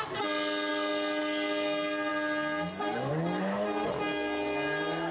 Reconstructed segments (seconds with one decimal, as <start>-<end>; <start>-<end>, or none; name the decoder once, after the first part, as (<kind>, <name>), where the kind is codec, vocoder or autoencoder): none